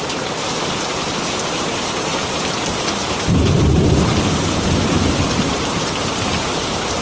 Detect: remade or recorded remade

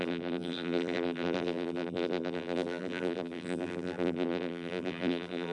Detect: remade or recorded remade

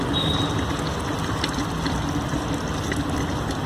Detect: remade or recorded recorded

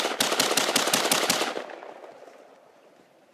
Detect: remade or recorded recorded